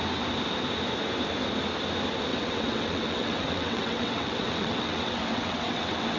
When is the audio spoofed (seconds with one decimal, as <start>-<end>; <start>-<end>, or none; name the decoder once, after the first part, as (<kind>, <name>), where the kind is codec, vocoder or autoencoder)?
2.3-6.2 (vocoder, WaveNeXt)